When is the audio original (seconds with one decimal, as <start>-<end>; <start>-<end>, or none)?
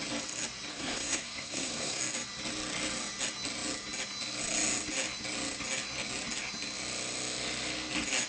0.0-0.7; 2.0-8.3